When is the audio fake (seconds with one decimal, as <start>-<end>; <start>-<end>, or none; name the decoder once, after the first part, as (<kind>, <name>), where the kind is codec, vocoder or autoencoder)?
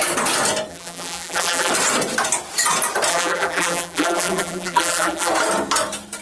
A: 0.7-1.7 (vocoder, BigVGAN v2); 3.1-5.3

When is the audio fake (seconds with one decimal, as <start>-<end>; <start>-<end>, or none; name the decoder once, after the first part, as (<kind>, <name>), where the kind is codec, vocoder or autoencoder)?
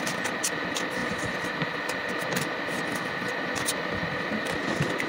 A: 1.0-2.1 (vocoder, BigVGAN v2)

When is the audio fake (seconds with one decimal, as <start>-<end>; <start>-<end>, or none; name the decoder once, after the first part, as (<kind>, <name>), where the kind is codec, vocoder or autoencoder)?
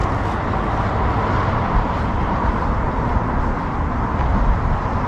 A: 1.6-3.1 (vocoder, BigVGAN v2); 4.6-5.1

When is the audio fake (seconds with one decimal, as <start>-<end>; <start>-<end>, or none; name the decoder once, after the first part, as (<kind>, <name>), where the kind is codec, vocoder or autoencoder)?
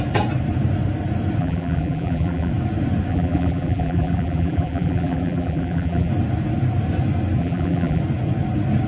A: 1.4-2.5 (vocoder, BigVGAN v2); 3.1-6.1; 7.4-8.0